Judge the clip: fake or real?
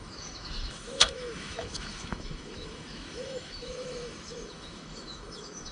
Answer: fake